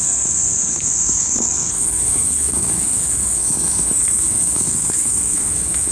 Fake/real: fake